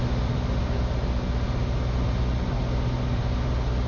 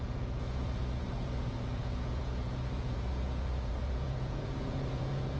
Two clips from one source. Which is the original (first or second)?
first